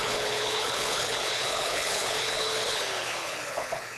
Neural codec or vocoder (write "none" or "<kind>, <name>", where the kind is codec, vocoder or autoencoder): codec, HILCodec